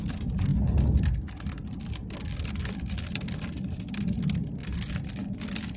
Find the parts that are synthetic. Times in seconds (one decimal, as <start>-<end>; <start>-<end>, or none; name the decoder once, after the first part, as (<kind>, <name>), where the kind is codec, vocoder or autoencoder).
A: none